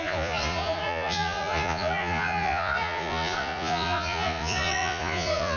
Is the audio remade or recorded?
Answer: remade